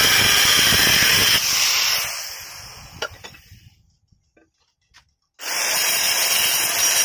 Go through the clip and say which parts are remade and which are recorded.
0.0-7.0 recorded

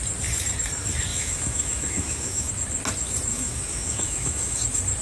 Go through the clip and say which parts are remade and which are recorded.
0.0-1.1 recorded; 1.1-2.5 remade; 2.5-3.3 recorded; 3.3-4.6 remade; 4.6-5.0 recorded

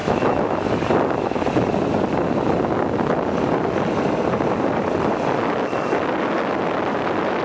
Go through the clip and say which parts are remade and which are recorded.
0.0-0.6 remade; 0.6-7.4 recorded